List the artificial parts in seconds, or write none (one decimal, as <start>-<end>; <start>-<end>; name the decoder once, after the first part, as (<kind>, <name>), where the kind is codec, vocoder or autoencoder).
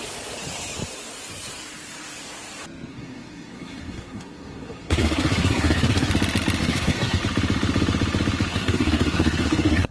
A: 2.9-6.1 (codec, SNAC); 6.6-7.2; 8.5-9.9